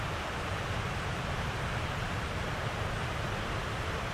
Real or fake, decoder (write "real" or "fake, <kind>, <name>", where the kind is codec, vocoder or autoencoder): fake, vocoder, BigVGAN v2